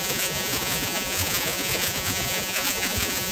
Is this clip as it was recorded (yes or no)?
no